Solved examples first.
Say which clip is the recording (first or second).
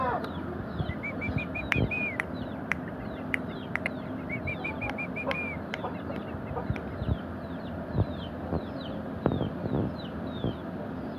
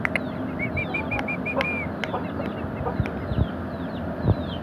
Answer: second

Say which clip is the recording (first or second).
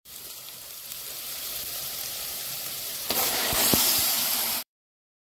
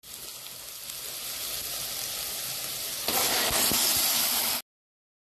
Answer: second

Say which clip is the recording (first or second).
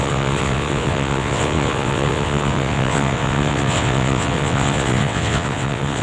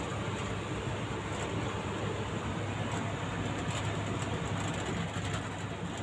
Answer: second